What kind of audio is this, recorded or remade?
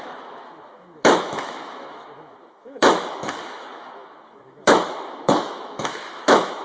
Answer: remade